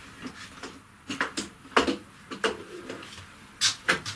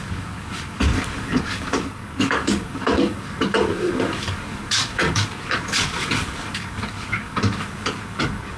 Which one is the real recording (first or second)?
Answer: first